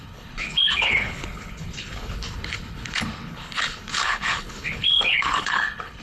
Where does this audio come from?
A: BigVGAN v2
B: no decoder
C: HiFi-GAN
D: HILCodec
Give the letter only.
D